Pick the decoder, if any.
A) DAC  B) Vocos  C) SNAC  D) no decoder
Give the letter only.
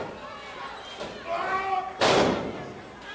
D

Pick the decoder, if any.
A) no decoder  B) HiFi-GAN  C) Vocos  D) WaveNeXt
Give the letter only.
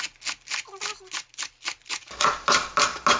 A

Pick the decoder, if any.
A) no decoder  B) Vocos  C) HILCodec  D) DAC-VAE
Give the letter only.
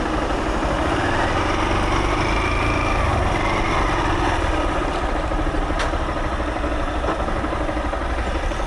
A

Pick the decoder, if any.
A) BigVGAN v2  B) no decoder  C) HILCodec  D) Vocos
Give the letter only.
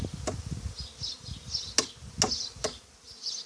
B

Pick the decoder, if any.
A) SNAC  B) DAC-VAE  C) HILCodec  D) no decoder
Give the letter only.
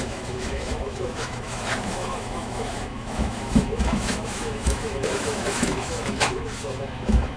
B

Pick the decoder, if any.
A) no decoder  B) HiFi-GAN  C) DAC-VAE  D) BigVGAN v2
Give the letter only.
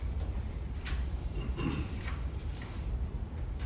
D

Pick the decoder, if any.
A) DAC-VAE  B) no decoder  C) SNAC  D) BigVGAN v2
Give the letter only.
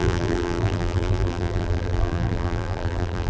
D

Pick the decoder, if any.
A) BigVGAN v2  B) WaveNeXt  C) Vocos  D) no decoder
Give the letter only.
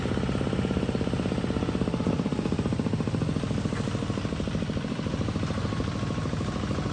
D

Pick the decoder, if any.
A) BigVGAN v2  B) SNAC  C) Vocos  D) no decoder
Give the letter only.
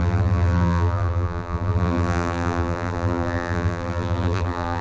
A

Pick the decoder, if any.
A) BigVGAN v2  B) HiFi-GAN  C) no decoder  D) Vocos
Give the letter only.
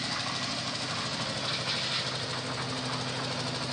C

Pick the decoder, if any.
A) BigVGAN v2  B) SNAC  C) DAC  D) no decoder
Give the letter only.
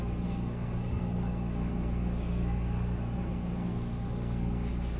B